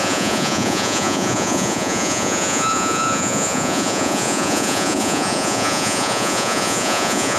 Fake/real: fake